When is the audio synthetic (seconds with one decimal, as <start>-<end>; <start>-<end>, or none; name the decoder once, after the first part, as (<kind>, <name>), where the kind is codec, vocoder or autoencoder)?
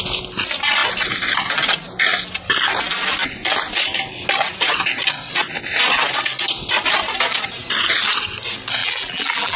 8.8-9.6 (vocoder, BigVGAN v2)